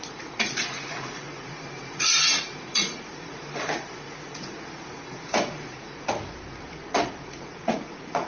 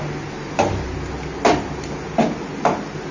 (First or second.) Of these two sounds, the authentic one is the second